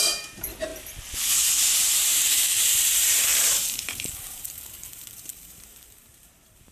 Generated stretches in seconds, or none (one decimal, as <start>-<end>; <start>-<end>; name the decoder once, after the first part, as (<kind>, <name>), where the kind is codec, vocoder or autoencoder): 0.0-0.7 (vocoder, BigVGAN v2); 1.7-6.7